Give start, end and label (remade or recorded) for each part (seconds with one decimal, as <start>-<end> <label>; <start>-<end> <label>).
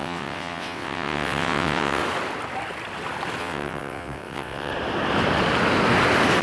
0.0-2.0 remade; 2.0-3.4 recorded; 3.4-4.7 remade; 4.7-6.4 recorded